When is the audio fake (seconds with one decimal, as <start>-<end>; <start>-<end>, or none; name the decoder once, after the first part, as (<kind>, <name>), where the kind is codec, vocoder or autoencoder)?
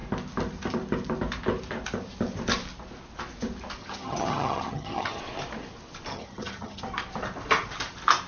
3.8-5.2 (vocoder, HiFi-GAN); 6.1-6.8